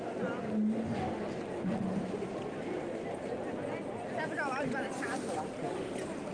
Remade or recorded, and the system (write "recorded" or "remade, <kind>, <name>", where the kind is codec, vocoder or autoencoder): recorded